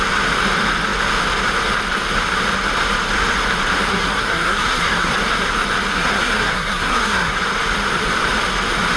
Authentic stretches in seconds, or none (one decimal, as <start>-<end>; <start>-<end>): 0.0-3.9; 5.1-5.9; 7.3-9.0